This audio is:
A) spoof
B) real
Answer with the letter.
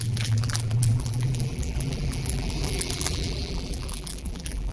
A